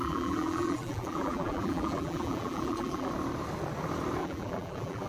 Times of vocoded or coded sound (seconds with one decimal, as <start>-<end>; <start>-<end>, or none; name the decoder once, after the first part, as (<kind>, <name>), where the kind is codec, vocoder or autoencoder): 0.0-3.1 (vocoder, BigVGAN v2); 4.2-5.1